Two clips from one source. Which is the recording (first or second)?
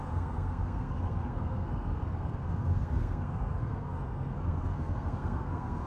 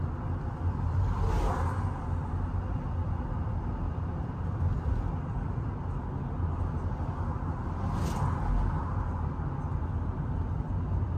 second